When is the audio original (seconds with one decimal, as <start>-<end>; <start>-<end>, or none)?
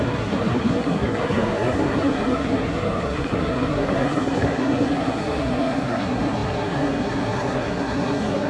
none